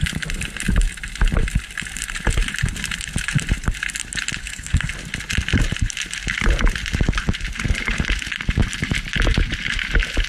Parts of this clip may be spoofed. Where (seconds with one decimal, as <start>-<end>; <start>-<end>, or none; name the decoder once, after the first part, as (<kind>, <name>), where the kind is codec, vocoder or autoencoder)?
4.4-4.9 (codec, SNAC)